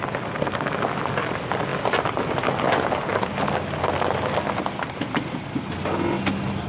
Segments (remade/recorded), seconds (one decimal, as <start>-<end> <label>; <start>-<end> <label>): 0.0-6.7 recorded

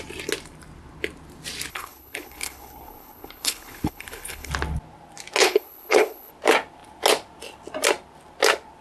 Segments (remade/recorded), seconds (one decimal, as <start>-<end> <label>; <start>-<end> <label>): 0.0-1.7 recorded; 1.7-4.5 remade; 4.5-5.4 recorded; 5.4-6.3 remade; 6.3-8.8 recorded

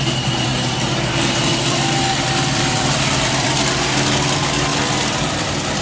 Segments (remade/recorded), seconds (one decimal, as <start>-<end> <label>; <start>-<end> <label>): 0.0-1.5 recorded; 1.5-4.1 remade; 4.1-4.7 recorded; 4.7-5.8 remade

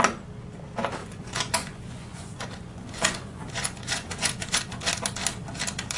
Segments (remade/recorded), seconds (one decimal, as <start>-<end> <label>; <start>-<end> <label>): 0.0-1.0 recorded; 1.0-4.6 remade; 4.6-6.0 recorded

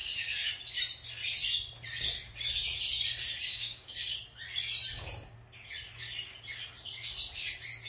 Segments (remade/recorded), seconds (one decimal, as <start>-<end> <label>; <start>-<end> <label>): 0.0-0.5 remade; 0.5-3.5 recorded; 3.5-4.2 remade; 4.2-7.9 recorded